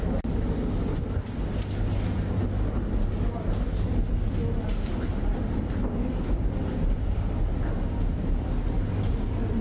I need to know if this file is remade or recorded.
recorded